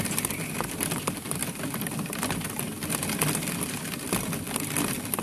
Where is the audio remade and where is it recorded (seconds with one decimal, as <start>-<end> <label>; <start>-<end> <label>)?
0.0-1.4 remade; 1.4-4.5 recorded; 4.5-5.2 remade